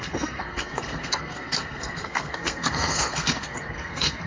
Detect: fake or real fake